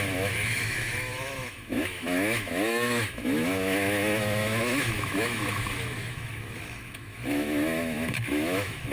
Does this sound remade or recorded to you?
remade